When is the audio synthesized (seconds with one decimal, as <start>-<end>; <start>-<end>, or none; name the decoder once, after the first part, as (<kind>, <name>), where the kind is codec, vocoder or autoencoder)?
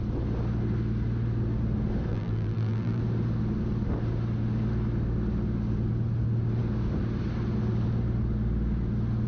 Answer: 2.1-3.0 (vocoder, BigVGAN v2)